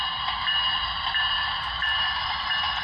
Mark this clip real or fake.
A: real